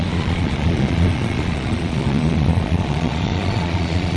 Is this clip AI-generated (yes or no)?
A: yes